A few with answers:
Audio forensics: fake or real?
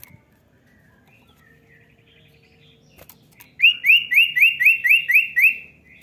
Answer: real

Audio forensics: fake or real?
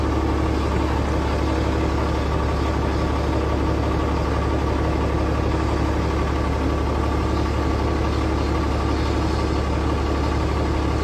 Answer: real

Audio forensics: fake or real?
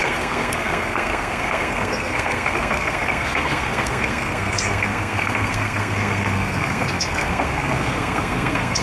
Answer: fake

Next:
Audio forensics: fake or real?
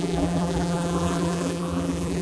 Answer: fake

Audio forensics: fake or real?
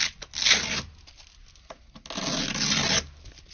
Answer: real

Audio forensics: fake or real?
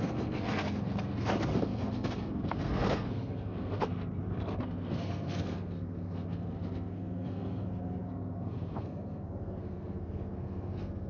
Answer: fake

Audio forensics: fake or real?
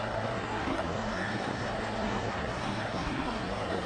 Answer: fake